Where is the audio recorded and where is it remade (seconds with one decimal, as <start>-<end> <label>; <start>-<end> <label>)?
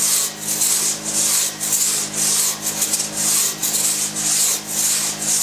0.0-5.4 recorded